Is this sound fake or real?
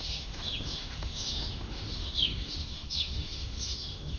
fake